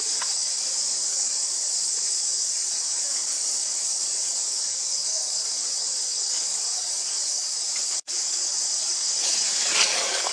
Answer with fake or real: fake